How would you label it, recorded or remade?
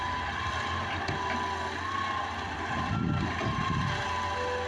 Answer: recorded